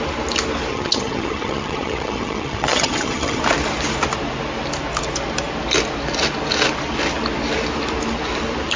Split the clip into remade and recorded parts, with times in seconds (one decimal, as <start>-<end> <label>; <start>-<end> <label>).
0.0-0.7 recorded; 0.7-3.4 remade; 3.4-8.8 recorded